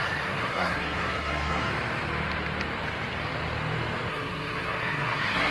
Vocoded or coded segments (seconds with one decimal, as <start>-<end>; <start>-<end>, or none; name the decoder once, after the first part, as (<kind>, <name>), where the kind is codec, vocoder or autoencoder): 0.0-1.7 (codec, SNAC); 4.1-5.5